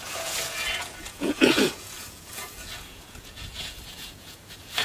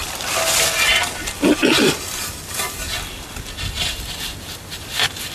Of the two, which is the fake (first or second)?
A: first